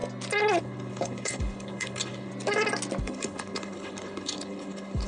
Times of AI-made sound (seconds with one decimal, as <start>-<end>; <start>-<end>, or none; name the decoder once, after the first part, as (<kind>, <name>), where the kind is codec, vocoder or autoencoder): 0.6-2.3 (codec, HILCodec); 3.0-5.1